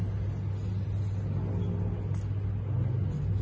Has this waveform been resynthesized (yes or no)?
no